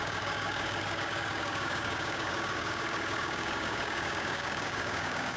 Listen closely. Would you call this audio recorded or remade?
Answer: remade